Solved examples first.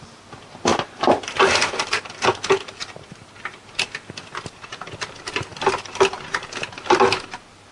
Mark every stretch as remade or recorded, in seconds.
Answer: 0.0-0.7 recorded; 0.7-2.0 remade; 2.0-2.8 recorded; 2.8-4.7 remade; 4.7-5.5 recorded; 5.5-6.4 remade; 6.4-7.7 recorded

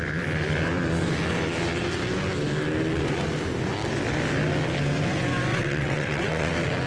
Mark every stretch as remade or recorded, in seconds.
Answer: 0.0-5.5 recorded; 5.5-6.5 remade; 6.5-6.9 recorded

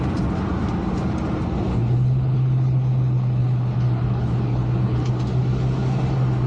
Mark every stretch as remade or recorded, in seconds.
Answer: 0.0-1.7 recorded; 1.7-5.1 remade; 5.1-6.5 recorded

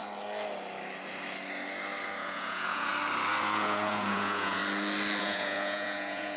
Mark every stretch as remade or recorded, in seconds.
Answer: 0.0-2.1 recorded; 2.1-2.9 remade; 2.9-3.4 recorded; 3.4-4.6 remade; 4.6-5.2 recorded; 5.2-6.4 remade

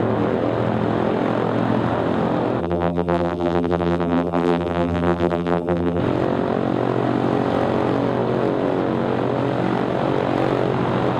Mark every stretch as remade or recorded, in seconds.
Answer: 0.0-2.6 recorded; 2.6-6.0 remade; 6.0-11.2 recorded

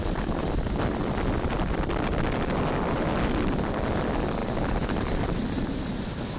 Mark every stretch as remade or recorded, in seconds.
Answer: 0.0-6.4 recorded

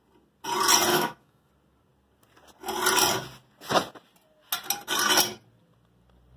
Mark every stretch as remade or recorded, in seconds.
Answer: 0.0-0.9 recorded; 0.9-1.5 remade; 1.5-6.4 recorded

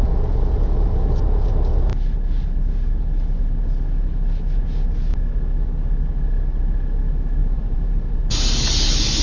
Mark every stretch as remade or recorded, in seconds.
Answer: 0.0-7.4 recorded; 7.4-8.2 remade; 8.2-9.2 recorded